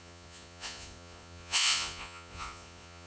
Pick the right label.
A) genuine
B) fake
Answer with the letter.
B